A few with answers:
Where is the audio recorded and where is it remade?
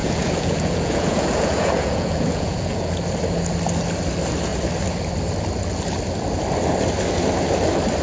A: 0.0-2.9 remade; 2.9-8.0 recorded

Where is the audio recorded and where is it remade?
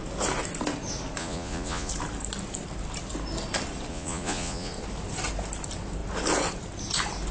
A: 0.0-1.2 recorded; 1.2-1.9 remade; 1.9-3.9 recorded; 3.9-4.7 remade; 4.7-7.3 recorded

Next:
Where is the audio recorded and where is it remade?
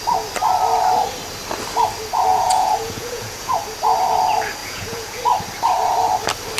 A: 0.0-2.3 recorded; 2.3-3.6 remade; 3.6-4.6 recorded; 4.6-5.2 remade; 5.2-6.6 recorded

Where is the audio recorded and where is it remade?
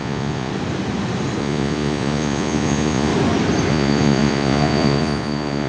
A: 0.0-0.5 remade; 0.5-1.4 recorded; 1.4-3.1 remade; 3.1-3.7 recorded; 3.7-5.7 remade